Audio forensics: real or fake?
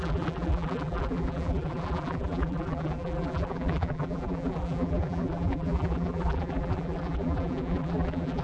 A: fake